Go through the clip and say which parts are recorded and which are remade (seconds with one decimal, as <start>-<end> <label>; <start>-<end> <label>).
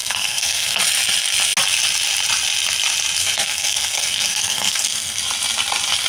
0.0-0.8 remade; 0.8-3.2 recorded; 3.2-5.2 remade; 5.2-6.1 recorded